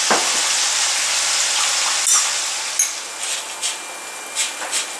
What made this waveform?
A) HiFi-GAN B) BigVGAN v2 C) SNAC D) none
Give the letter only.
D